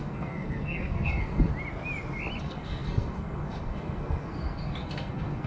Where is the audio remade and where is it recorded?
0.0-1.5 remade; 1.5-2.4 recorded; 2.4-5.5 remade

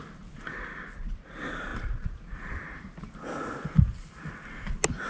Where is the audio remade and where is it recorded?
0.0-5.1 recorded

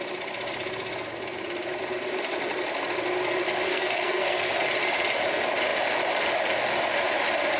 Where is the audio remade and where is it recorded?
0.0-3.7 recorded; 3.7-4.5 remade; 4.5-7.6 recorded

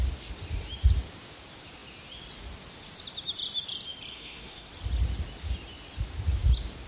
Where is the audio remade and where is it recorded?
0.0-4.1 recorded; 4.1-4.7 remade; 4.7-6.9 recorded

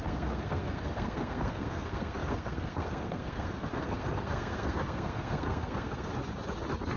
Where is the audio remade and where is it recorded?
0.0-6.1 remade; 6.1-7.0 recorded

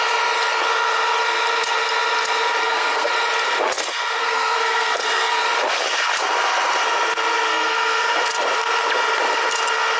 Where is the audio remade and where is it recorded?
0.0-2.6 recorded; 2.6-3.1 remade; 3.1-4.2 recorded; 4.2-5.4 remade; 5.4-7.5 recorded; 7.5-8.2 remade; 8.2-10.0 recorded